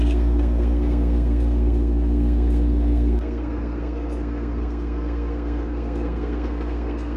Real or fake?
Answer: fake